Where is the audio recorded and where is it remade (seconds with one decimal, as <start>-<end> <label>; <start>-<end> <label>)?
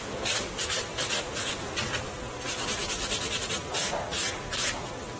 0.0-0.9 recorded; 0.9-4.0 remade; 4.0-5.2 recorded